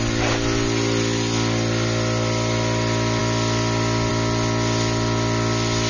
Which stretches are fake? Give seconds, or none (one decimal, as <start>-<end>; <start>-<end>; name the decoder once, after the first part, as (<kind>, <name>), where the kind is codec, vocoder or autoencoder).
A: none